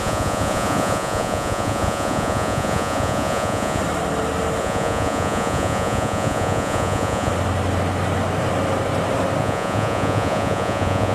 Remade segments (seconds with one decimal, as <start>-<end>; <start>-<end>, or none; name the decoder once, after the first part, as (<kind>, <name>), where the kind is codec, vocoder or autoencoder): 0.0-3.8 (vocoder, Vocos); 4.6-7.3; 9.4-11.1